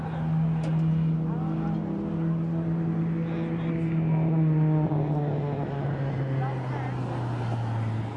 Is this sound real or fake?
real